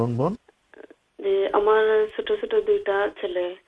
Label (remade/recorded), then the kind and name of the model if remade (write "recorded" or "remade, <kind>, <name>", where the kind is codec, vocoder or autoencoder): recorded